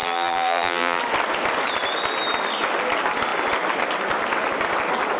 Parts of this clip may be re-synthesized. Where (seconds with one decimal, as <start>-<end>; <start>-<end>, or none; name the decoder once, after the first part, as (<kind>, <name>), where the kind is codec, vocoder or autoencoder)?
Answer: 0.0-1.0 (vocoder, BigVGAN v2)